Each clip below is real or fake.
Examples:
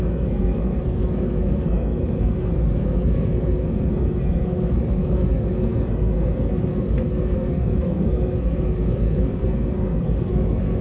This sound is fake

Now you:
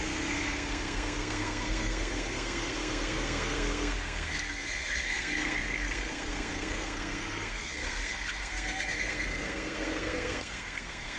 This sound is fake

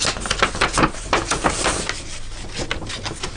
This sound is real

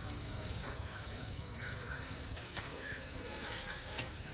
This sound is fake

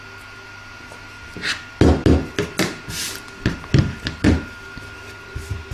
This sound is real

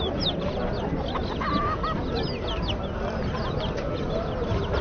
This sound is real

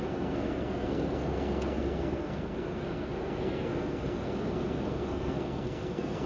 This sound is fake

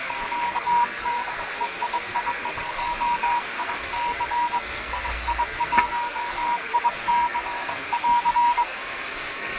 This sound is fake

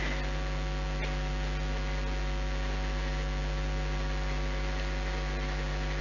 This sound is real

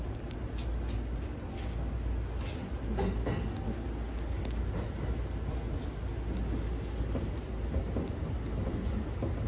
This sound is real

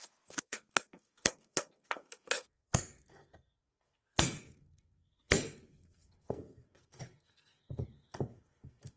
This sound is fake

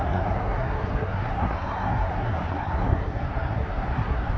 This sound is fake